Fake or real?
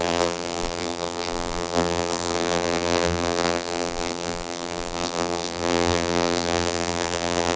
fake